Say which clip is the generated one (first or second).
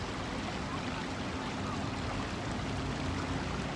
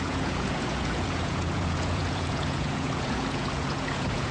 second